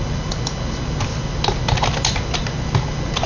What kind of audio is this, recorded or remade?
recorded